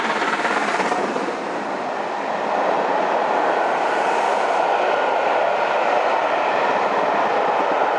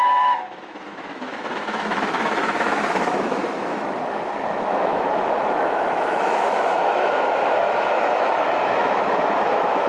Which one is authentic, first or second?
first